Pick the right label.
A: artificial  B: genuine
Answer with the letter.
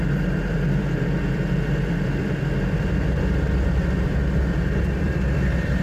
A